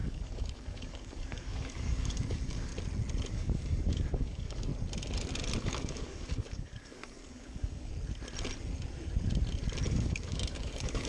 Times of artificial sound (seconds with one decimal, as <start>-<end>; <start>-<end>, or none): 0.0-2.7; 3.3-4.7; 5.6-7.9; 9.9-11.1